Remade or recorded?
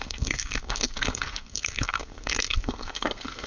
remade